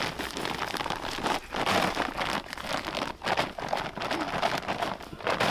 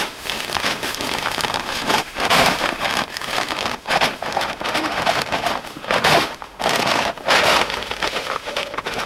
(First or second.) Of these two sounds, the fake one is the second